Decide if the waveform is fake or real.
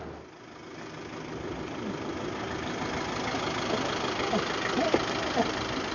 real